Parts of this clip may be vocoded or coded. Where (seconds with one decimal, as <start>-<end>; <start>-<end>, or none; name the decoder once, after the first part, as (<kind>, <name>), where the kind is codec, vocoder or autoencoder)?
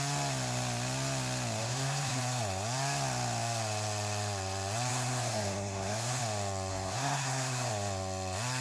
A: 1.6-2.2 (codec, SNAC); 4.9-6.2; 6.7-7.7